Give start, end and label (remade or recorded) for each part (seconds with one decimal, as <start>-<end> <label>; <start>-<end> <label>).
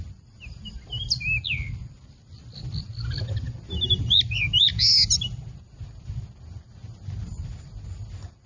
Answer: 0.0-8.5 recorded